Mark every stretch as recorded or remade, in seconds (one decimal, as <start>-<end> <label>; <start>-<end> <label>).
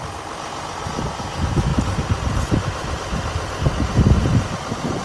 0.0-5.0 recorded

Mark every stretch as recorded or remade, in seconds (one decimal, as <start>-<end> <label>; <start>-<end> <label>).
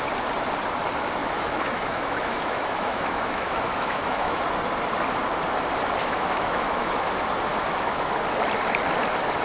0.0-1.2 recorded; 1.2-4.4 remade; 4.4-6.0 recorded; 6.0-7.1 remade; 7.1-7.5 recorded; 7.5-8.1 remade; 8.1-9.4 recorded